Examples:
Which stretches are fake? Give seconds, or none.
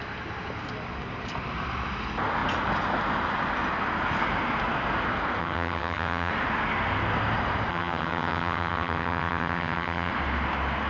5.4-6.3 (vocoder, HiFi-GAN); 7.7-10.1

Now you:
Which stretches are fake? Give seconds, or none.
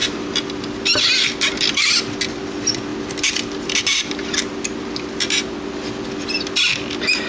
none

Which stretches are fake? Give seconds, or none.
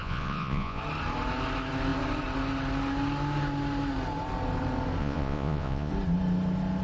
0.0-0.8 (vocoder, Vocos); 5.0-5.9